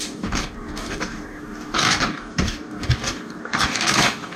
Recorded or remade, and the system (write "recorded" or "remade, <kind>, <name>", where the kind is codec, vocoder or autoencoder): remade, codec, DAC